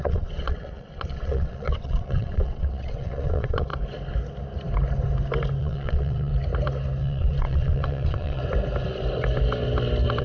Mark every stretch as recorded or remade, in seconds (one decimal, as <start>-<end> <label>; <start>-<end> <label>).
0.0-3.7 remade; 3.7-5.6 recorded; 5.6-6.3 remade; 6.3-7.0 recorded; 7.0-8.4 remade; 8.4-10.2 recorded

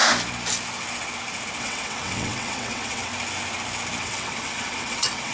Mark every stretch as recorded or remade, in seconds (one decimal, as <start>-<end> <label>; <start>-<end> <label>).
0.0-1.6 recorded; 1.6-3.1 remade; 3.1-4.0 recorded; 4.0-5.3 remade

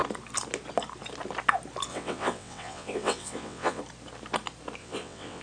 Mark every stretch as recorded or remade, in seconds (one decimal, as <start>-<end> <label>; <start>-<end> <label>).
0.0-1.9 recorded; 1.9-3.8 remade; 3.8-4.8 recorded; 4.8-5.4 remade

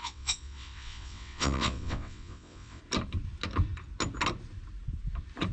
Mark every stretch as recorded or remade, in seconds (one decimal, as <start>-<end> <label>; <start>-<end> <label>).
0.0-2.8 remade; 2.8-5.5 recorded

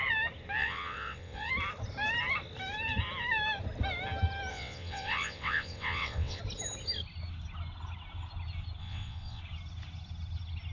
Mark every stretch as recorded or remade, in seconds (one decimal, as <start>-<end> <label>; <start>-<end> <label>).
0.0-0.6 recorded; 0.6-1.5 remade; 1.5-4.5 recorded; 4.5-6.4 remade; 6.4-8.8 recorded; 8.8-9.4 remade; 9.4-10.7 recorded